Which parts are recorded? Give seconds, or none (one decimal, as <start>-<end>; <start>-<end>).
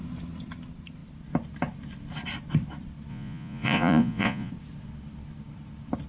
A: 0.0-3.1; 4.5-6.1